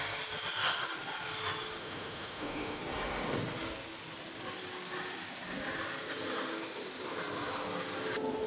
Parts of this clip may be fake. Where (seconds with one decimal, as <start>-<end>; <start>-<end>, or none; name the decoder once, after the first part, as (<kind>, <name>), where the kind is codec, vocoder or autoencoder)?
1.8-2.8 (autoencoder, DAC-VAE)